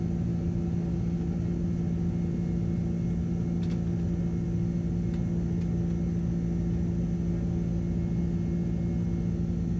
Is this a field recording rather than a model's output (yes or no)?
yes